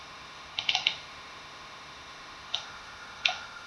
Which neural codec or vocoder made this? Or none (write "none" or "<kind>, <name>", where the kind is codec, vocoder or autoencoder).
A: autoencoder, DAC-VAE